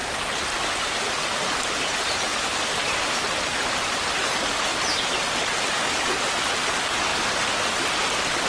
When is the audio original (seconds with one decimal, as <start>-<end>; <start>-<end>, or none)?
0.0-1.3; 4.2-4.7; 5.2-8.5